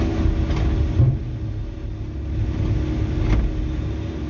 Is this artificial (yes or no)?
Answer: no